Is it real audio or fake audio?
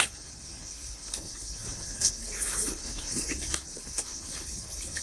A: fake